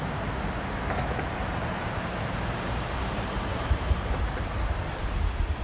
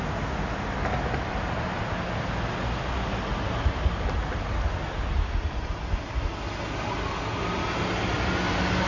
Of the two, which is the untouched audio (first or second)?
second